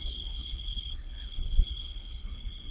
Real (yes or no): no